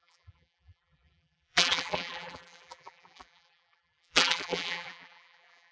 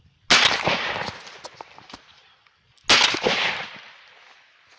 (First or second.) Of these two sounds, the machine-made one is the first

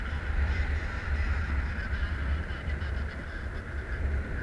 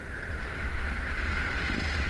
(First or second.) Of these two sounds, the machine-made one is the second